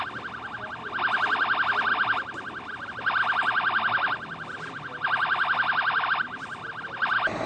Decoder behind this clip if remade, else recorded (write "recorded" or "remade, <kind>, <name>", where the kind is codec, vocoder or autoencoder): recorded